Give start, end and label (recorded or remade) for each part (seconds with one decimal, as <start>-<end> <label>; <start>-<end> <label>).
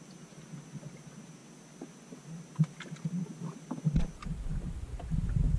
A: 0.0-5.6 recorded